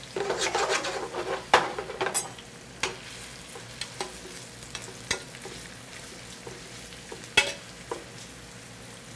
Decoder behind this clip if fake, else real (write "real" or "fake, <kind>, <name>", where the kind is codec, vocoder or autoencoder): real